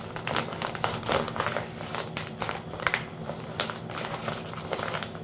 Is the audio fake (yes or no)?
yes